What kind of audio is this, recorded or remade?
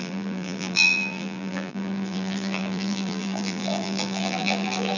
remade